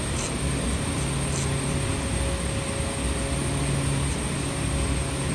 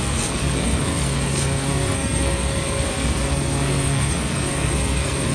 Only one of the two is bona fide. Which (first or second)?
first